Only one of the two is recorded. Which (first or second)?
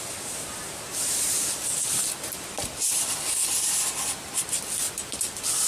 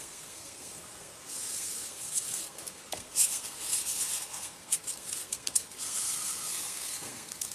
first